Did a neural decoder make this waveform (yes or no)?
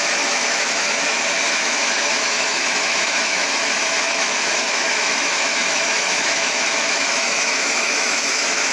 yes